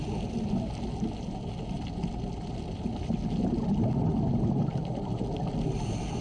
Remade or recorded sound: recorded